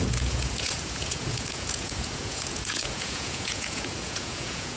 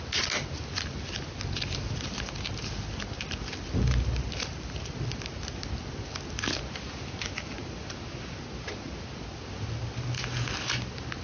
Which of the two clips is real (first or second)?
second